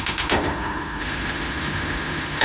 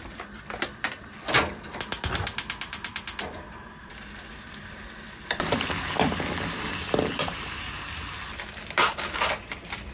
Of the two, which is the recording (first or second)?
second